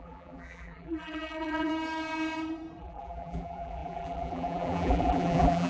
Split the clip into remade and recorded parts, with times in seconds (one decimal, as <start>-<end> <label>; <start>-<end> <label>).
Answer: 0.0-1.7 remade; 1.7-2.8 recorded; 2.8-5.7 remade